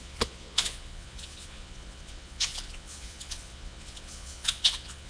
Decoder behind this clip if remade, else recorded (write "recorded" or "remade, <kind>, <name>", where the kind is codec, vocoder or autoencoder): remade, vocoder, Vocos